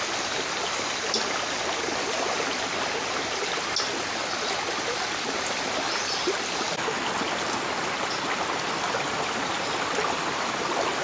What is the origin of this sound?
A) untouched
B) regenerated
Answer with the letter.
A